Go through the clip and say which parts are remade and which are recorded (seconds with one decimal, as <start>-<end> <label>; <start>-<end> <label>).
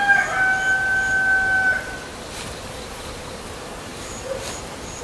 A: 0.0-5.0 recorded